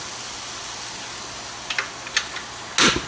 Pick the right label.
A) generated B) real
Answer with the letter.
B